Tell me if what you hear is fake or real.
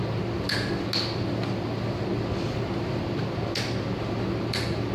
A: real